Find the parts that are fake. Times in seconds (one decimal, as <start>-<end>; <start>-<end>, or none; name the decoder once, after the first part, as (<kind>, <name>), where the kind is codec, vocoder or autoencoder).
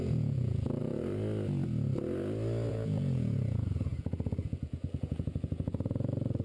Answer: 0.0-0.8 (vocoder, Vocos); 2.7-6.4